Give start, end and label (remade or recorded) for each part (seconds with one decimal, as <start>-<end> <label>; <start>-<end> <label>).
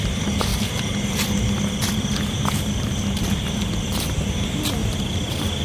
0.0-0.5 remade; 0.5-3.9 recorded; 3.9-5.6 remade